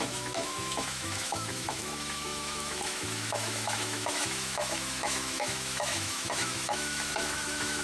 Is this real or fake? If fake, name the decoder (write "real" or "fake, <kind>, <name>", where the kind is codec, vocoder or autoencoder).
fake, autoencoder, DAC-VAE